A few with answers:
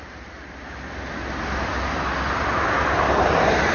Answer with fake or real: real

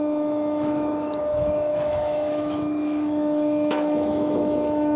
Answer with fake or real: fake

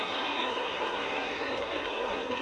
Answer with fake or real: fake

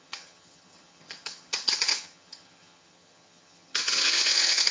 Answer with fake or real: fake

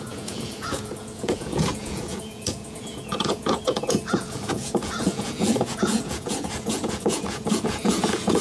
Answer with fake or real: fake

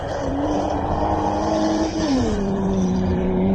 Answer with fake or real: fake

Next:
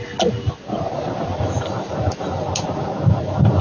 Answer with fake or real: real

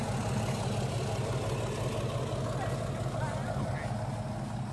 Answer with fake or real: real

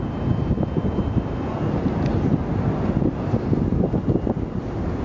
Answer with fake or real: real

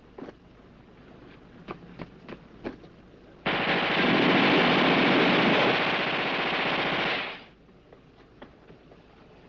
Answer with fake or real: real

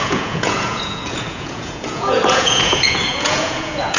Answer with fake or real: fake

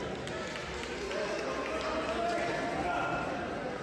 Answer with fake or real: real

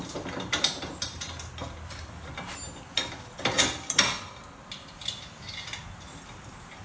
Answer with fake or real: real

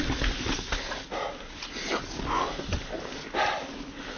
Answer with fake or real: real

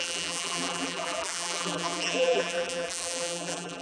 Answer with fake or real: fake